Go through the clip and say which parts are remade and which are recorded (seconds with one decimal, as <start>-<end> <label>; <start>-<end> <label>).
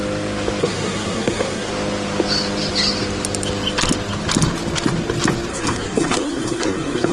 0.0-0.6 recorded; 0.6-1.7 remade; 1.7-5.5 recorded; 5.5-7.1 remade